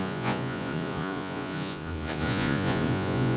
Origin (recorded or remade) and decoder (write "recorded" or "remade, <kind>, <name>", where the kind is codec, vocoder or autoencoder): remade, vocoder, Vocos